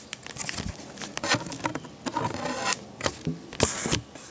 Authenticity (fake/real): real